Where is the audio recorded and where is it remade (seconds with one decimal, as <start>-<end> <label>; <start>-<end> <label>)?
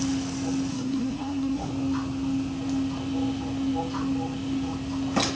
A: 0.0-0.7 recorded; 0.7-1.7 remade; 1.7-5.3 recorded